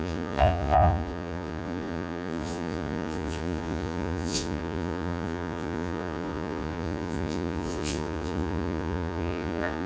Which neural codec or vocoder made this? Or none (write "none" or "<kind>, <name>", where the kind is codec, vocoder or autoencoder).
vocoder, Vocos